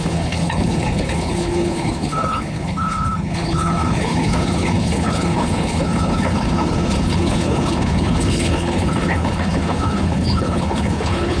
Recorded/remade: remade